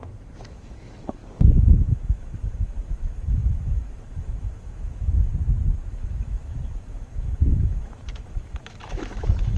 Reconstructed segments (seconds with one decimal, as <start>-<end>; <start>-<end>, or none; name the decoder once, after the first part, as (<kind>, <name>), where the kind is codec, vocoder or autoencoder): 0.0-1.2 (autoencoder, DAC-VAE); 1.8-5.3; 5.9-9.6